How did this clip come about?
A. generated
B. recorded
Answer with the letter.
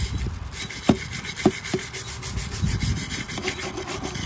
B